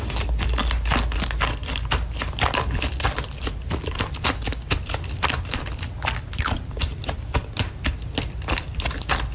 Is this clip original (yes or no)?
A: yes